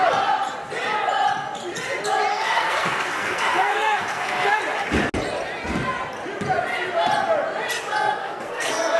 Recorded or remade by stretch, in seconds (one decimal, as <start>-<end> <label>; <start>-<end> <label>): 0.0-2.3 recorded; 2.3-4.6 remade; 4.6-8.2 recorded; 8.2-9.0 remade